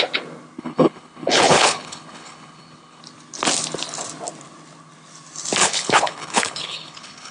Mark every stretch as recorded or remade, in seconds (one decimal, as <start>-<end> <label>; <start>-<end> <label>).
0.0-0.6 recorded; 0.6-3.0 remade; 3.0-5.6 recorded; 5.6-7.3 remade